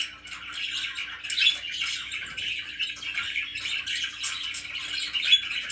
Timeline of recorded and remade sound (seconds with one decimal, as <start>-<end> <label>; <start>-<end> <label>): 0.0-0.5 remade; 0.5-2.4 recorded; 2.4-3.5 remade; 3.5-4.0 recorded; 4.0-5.7 remade